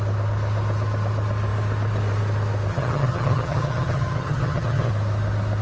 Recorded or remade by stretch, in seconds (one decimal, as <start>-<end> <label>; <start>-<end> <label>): 0.0-2.7 recorded; 2.7-4.9 remade; 4.9-5.6 recorded